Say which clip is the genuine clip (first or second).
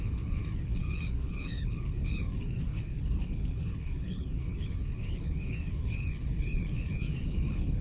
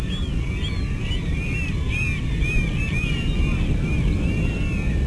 second